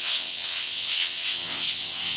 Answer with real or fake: fake